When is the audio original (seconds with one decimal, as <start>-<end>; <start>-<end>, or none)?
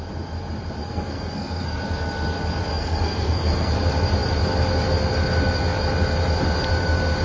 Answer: 0.0-0.8; 1.8-2.7; 3.7-7.2